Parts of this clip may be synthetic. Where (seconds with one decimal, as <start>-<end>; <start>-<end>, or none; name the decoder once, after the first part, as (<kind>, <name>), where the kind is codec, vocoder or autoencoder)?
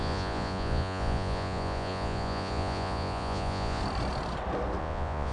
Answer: 0.0-3.8 (vocoder, Vocos); 4.8-5.3